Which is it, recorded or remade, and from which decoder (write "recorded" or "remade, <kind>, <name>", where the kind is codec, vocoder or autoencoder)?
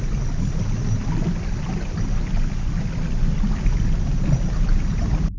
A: recorded